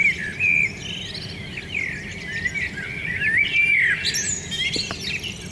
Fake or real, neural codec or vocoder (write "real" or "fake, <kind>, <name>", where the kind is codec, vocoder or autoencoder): real